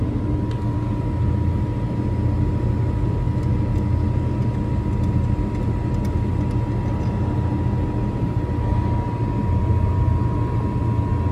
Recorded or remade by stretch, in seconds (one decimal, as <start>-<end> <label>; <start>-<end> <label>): 0.0-9.4 recorded; 9.4-10.8 remade; 10.8-11.3 recorded